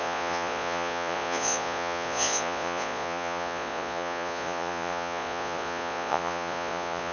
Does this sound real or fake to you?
fake